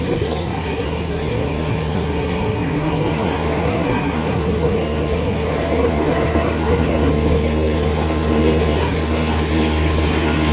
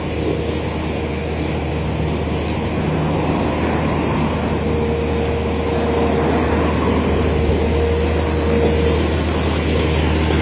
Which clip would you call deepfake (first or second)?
first